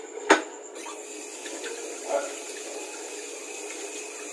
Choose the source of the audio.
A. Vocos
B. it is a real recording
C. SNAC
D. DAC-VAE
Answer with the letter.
B